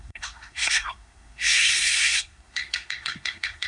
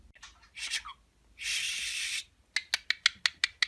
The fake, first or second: first